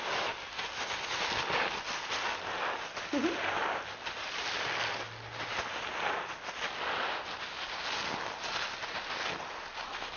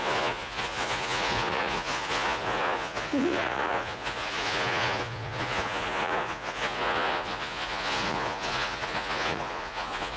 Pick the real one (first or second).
first